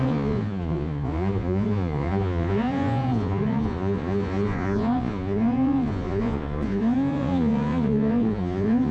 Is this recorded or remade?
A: remade